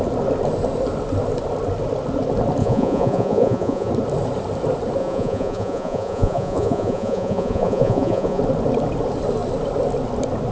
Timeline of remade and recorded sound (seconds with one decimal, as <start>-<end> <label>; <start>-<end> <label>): 0.0-2.6 recorded; 2.6-3.9 remade; 3.9-5.0 recorded; 5.0-8.4 remade; 8.4-10.5 recorded